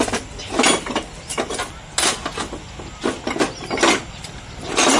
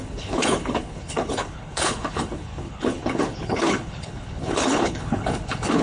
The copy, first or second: second